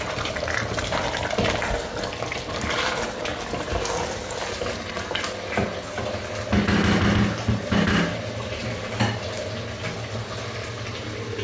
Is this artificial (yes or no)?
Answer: no